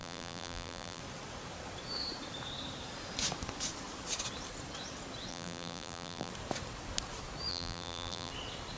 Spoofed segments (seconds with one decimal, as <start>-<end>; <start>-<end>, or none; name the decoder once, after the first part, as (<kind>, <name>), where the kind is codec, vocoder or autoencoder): 0.0-1.0 (vocoder, BigVGAN v2); 5.3-6.3; 7.5-8.3

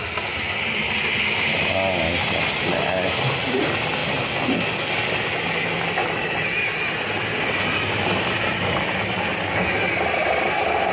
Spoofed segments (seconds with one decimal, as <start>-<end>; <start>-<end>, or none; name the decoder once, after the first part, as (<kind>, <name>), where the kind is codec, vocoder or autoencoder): none

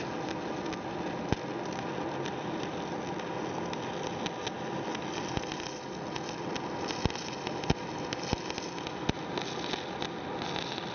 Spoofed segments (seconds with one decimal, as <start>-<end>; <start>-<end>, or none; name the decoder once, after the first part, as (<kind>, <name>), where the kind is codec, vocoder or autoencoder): none

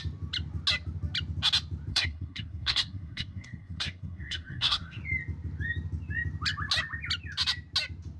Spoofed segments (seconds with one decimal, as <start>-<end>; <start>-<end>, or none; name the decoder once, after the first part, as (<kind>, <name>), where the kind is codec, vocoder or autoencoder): 1.9-5.0 (codec, SNAC)

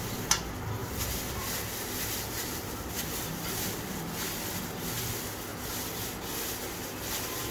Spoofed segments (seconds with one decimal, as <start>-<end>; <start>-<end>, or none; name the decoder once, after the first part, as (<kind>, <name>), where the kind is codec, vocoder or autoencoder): none

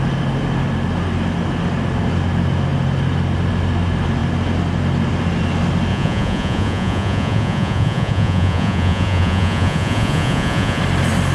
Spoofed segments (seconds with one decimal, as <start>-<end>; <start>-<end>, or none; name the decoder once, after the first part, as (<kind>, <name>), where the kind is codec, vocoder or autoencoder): 5.9-10.8 (vocoder, Vocos)

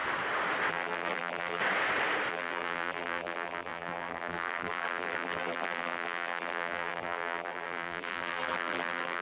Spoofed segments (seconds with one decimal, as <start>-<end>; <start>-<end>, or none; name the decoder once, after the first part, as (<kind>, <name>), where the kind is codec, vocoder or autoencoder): 0.7-1.6 (vocoder, BigVGAN v2); 2.3-9.2